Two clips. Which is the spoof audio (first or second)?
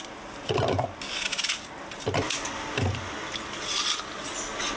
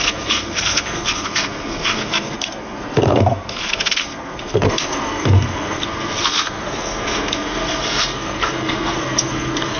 second